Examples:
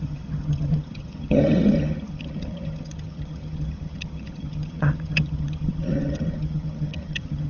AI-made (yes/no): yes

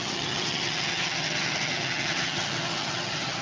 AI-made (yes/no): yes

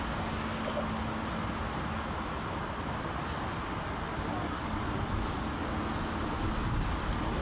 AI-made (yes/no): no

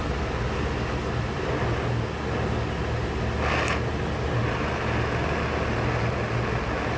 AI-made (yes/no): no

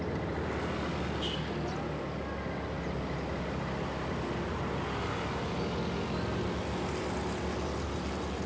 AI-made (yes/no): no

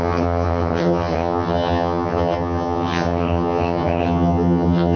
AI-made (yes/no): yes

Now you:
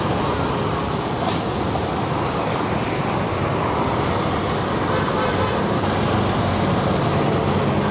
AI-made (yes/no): no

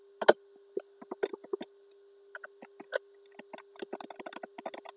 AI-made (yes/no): no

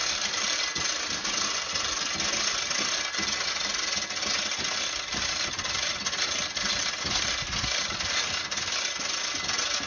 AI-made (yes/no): no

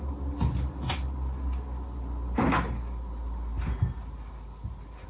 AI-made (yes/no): no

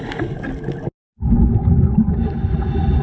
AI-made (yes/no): no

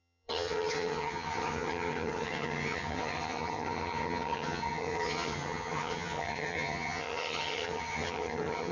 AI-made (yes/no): yes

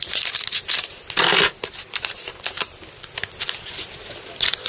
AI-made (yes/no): no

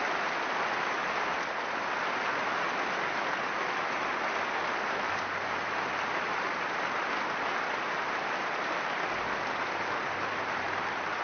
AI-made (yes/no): no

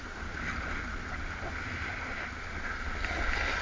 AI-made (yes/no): no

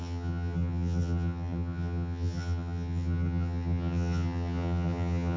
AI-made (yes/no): yes